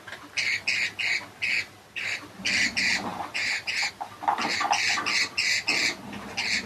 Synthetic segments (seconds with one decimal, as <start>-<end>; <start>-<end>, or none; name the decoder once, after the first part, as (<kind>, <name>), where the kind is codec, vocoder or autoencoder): 3.1-3.9 (vocoder, BigVGAN v2)